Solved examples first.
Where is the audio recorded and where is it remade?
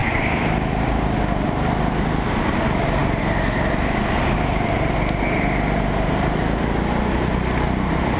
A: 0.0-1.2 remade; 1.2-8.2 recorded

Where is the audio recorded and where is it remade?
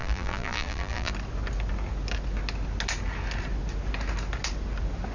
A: 0.0-1.1 remade; 1.1-5.1 recorded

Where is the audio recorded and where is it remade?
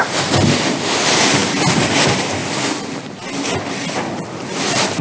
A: 0.0-1.4 remade; 1.4-2.0 recorded; 2.0-2.4 remade; 2.4-4.1 recorded; 4.1-5.0 remade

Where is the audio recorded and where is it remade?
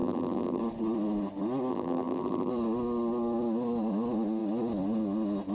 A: 0.0-0.6 remade; 0.6-1.7 recorded; 1.7-2.5 remade; 2.5-5.5 recorded